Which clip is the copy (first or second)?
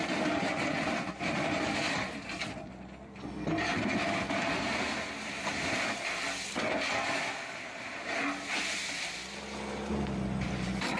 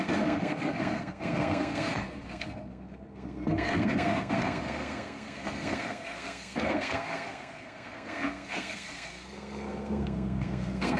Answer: second